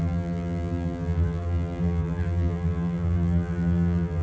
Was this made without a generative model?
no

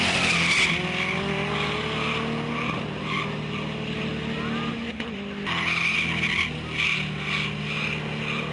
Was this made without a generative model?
yes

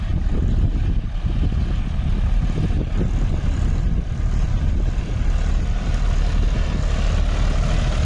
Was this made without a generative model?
yes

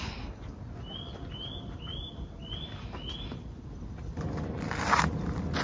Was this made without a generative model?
yes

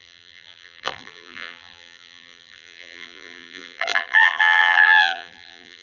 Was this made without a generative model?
no